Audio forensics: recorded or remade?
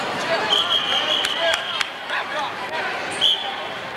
remade